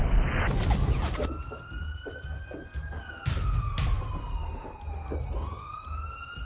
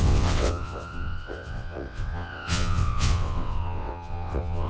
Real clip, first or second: first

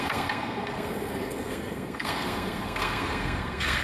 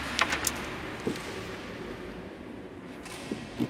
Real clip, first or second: second